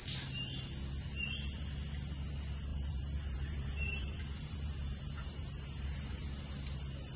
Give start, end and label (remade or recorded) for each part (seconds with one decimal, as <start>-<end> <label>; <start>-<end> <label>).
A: 0.0-2.7 recorded; 2.7-6.4 remade; 6.4-7.2 recorded